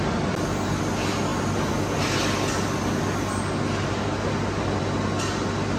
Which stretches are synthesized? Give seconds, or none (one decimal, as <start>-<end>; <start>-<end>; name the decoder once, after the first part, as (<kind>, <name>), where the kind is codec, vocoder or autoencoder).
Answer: none